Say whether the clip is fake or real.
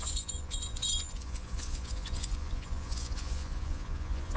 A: fake